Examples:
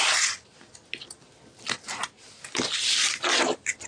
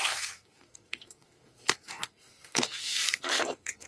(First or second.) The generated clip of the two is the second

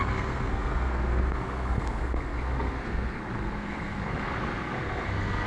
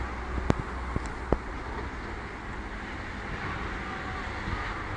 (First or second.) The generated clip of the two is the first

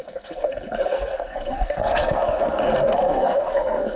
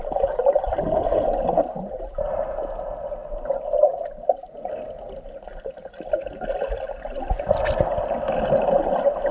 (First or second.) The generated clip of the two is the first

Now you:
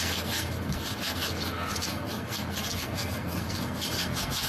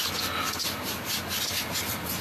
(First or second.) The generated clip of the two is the first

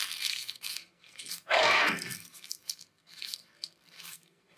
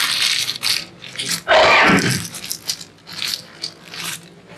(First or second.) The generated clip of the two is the first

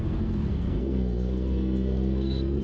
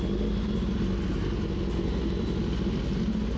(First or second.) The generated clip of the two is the first